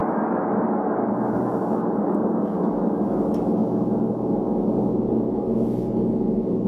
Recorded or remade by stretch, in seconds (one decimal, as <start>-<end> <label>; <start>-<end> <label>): 0.0-6.7 remade